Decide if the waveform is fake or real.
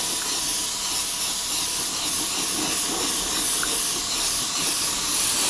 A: real